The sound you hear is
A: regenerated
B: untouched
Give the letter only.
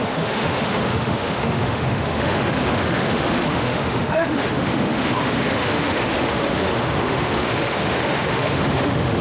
A